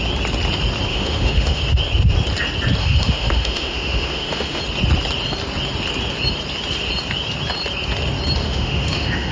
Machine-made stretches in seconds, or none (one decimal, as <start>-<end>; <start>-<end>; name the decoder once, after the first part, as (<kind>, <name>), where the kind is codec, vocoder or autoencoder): 0.9-1.6 (autoencoder, DAC-VAE); 2.8-4.6; 8.4-9.3